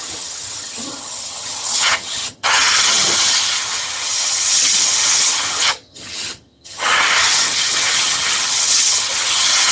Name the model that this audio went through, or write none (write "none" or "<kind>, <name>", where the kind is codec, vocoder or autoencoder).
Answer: vocoder, HiFi-GAN